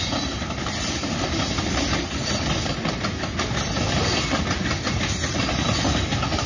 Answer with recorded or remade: recorded